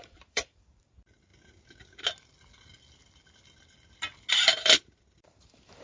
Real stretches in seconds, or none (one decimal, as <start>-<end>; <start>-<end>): 1.3-4.3